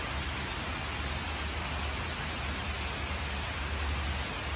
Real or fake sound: real